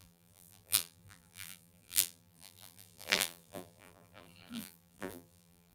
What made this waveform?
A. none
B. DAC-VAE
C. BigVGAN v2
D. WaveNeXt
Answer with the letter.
C